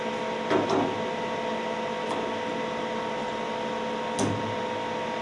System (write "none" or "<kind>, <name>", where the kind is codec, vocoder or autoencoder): none